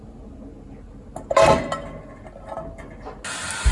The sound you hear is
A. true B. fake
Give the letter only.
A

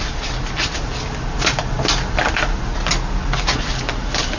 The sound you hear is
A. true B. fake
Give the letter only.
A